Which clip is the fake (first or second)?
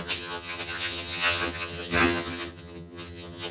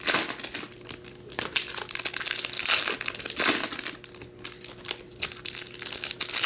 first